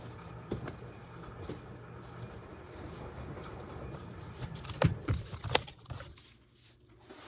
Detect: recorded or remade recorded